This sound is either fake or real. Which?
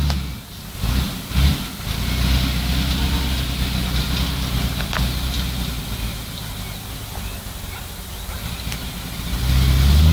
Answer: real